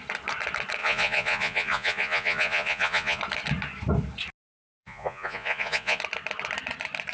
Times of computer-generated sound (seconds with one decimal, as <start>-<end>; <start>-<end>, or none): 0.8-3.2; 4.5-6.0

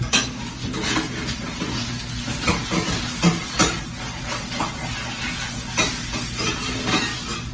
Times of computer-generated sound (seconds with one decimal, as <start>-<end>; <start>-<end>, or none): none

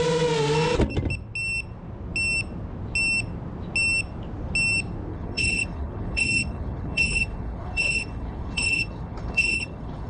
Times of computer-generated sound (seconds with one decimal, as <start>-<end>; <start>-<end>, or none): 5.1-10.1

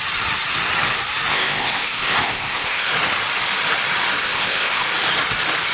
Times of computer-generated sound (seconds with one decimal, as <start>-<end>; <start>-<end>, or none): 1.3-2.9; 4.2-4.8

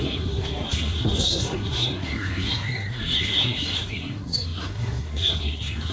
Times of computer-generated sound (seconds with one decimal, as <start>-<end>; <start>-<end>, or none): 0.0-5.9

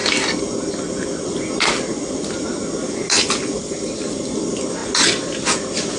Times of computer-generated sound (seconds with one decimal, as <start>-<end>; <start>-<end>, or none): none

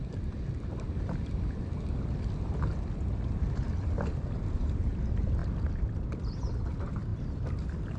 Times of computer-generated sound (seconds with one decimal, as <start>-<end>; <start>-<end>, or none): 7.1-8.0